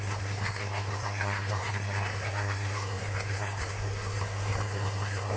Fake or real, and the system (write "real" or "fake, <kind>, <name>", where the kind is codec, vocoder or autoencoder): fake, codec, SNAC